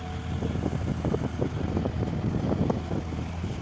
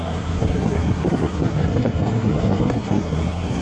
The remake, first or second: second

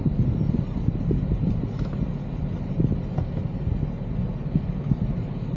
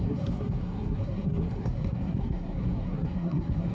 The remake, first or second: second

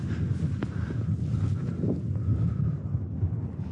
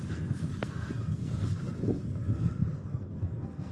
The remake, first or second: second